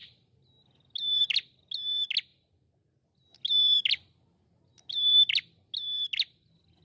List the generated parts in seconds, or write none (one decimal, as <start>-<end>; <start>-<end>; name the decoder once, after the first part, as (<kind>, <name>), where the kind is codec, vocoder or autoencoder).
none